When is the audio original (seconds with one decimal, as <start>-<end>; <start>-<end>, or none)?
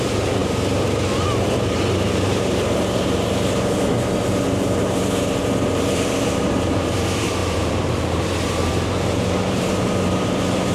none